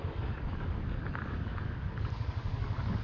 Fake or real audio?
fake